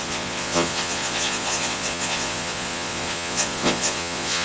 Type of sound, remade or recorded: remade